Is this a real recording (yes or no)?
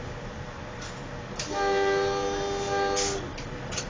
yes